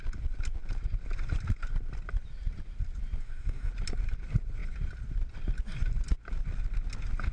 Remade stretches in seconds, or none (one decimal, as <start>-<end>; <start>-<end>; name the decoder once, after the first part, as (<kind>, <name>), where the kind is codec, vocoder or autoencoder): 3.2-3.7 (codec, DAC)